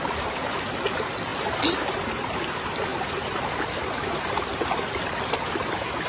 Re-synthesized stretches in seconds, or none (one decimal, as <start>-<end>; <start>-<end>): 2.9-3.4